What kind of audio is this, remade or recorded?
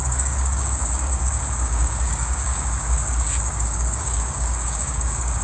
remade